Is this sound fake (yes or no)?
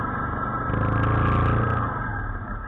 no